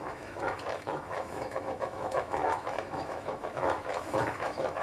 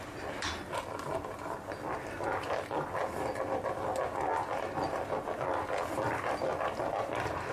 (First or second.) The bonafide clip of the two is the second